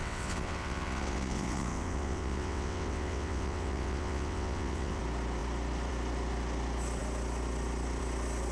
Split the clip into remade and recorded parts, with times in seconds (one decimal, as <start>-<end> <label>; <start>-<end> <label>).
0.0-5.0 remade; 5.0-8.5 recorded